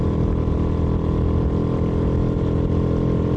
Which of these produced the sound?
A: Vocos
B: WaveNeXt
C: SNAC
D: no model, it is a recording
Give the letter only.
D